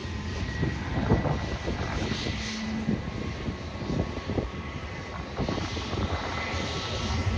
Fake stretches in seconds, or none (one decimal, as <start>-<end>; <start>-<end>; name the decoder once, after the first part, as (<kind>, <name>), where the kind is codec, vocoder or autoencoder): none